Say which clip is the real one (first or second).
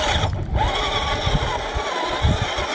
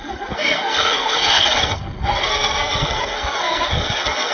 first